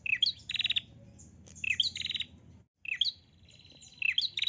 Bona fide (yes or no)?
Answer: yes